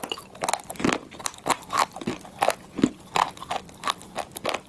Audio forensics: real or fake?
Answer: real